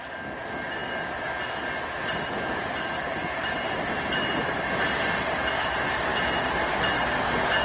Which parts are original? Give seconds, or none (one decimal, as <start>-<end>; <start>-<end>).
0.0-7.6

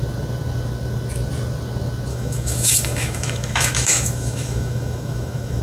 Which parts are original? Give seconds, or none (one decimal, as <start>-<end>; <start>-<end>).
0.0-2.1